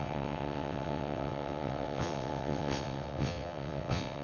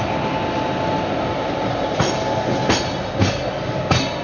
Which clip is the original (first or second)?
second